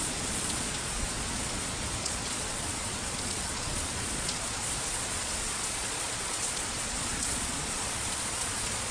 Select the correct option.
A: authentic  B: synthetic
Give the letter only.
B